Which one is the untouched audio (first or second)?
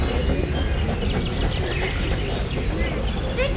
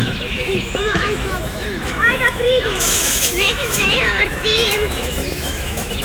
first